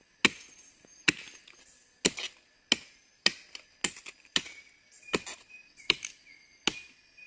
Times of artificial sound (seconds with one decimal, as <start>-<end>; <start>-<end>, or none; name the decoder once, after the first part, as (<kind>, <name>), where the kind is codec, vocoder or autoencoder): none